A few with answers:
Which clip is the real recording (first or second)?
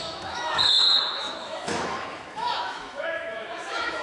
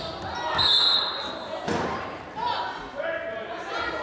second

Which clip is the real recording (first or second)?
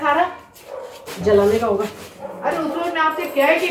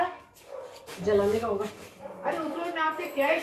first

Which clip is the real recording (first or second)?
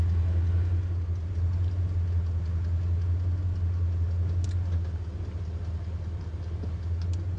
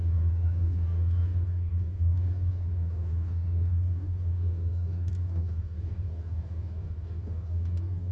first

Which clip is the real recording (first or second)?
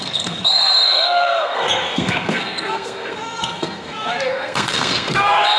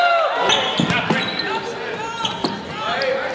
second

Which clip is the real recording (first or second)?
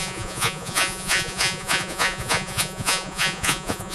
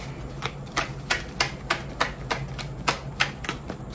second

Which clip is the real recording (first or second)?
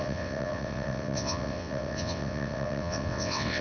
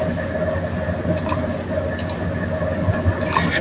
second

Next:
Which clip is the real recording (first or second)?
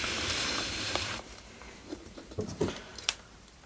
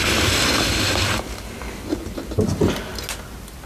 second